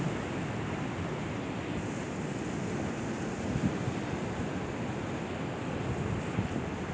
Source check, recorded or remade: recorded